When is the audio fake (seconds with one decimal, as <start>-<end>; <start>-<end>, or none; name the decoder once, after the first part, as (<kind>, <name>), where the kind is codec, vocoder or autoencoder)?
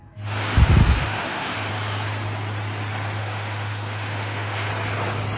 0.8-1.7 (autoencoder, DAC-VAE); 3.2-4.7